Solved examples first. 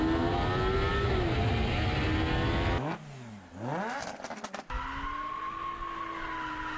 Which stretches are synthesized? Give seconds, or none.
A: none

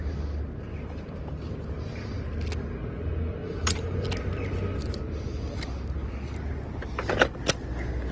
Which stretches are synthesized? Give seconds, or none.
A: 3.4-4.0 (vocoder, BigVGAN v2)

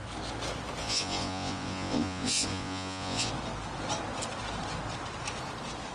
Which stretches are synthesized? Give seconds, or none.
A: 0.8-3.3 (vocoder, Vocos)

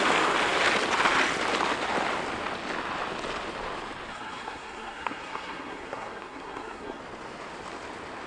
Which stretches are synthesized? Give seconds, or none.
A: 4.1-7.0 (codec, SNAC)

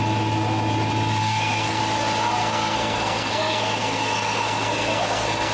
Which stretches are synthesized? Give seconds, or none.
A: 1.2-1.8 (codec, SNAC); 2.4-5.5

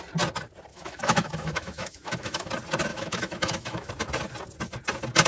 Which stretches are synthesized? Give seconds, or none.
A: 0.7-2.5 (autoencoder, DAC-VAE); 2.9-3.9

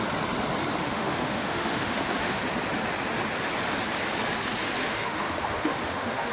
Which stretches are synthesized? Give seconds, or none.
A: 0.8-2.4 (autoencoder, DAC-VAE); 4.8-6.3